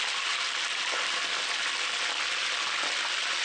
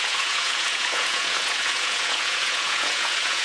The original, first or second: first